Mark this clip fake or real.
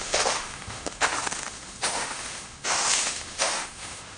fake